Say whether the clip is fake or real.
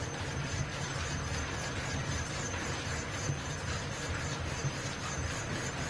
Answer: real